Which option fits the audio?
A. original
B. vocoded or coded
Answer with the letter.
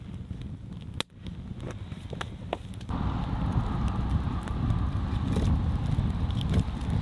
A